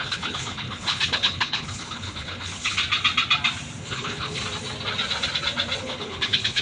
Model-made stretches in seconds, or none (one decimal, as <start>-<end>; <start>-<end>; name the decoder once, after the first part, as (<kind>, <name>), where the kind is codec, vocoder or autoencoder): 0.0-2.8 (codec, HILCodec); 3.8-4.4; 5.8-6.6